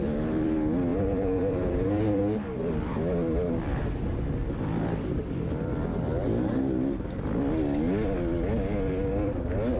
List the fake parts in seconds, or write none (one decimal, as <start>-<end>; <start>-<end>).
0.9-2.2